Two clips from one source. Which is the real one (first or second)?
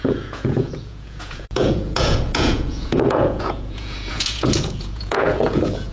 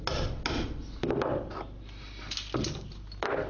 second